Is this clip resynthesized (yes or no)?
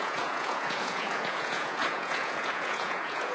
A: yes